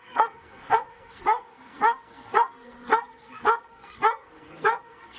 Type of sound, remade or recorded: remade